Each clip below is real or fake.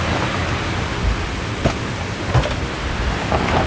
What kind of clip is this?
real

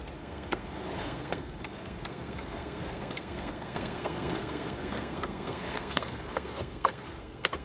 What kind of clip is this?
fake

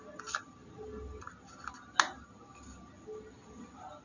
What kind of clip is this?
real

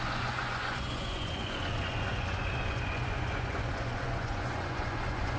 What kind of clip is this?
fake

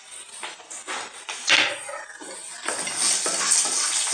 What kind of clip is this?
real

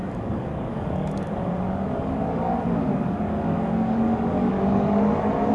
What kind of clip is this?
fake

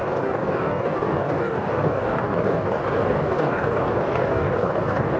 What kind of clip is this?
fake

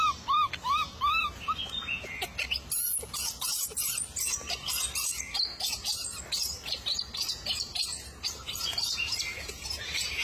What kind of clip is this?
real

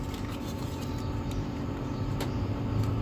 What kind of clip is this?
fake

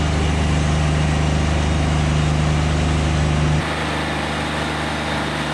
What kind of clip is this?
real